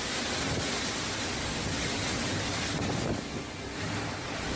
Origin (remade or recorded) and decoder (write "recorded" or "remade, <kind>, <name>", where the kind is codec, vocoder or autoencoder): recorded